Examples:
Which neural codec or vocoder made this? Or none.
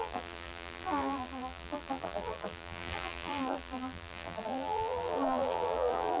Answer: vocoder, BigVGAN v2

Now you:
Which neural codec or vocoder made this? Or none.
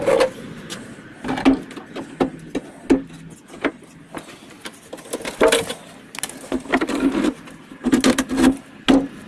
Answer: none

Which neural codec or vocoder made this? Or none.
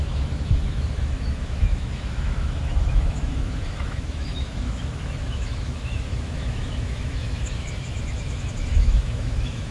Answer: autoencoder, DAC-VAE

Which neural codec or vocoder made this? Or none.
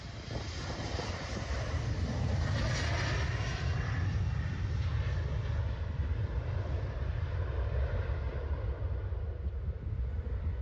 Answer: none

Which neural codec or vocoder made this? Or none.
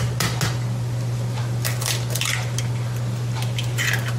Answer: none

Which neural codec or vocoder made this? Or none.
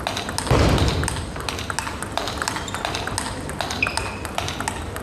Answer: none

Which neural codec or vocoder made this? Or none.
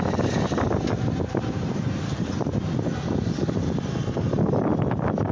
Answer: none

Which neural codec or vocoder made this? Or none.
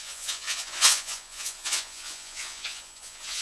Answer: vocoder, Vocos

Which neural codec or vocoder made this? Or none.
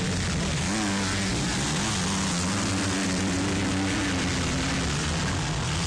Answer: none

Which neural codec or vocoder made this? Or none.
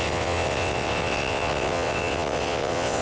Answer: vocoder, WaveNeXt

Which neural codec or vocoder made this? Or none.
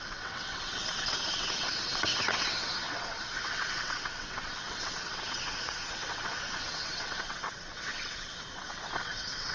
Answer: vocoder, WaveNeXt